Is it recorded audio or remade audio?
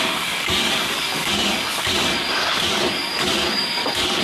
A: remade